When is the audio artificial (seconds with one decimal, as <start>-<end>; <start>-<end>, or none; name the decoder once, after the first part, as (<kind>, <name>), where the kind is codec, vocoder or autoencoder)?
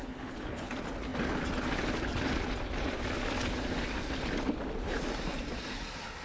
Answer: 0.0-0.7 (codec, HILCodec)